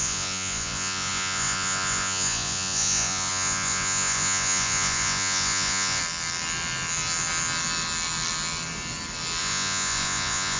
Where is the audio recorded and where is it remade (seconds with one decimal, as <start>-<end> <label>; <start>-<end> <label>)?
0.0-6.0 remade; 6.0-9.4 recorded; 9.4-10.6 remade